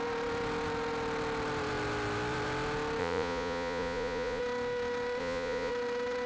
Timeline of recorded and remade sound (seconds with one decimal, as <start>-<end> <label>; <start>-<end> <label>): 0.0-3.0 recorded; 3.0-4.4 remade; 4.4-5.2 recorded; 5.2-5.7 remade; 5.7-6.3 recorded